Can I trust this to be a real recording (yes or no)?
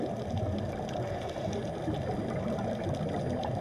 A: yes